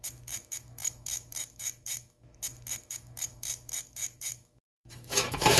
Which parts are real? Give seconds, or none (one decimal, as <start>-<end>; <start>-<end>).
none